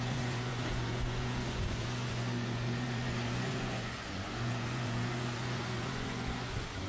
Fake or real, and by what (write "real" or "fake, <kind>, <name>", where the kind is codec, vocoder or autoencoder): fake, vocoder, Vocos